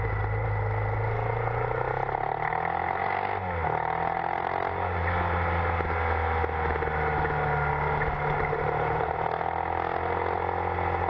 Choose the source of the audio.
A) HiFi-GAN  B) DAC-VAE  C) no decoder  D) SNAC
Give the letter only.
C